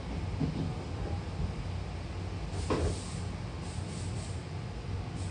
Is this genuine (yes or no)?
yes